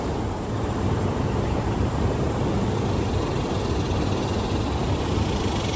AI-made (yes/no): no